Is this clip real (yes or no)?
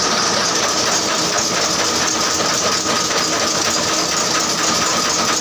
yes